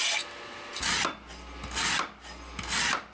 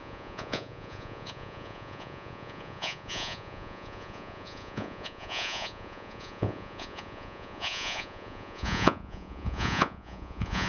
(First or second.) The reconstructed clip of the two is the second